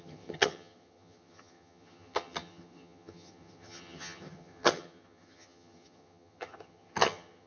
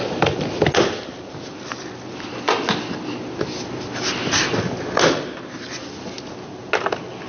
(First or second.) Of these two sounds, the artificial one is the first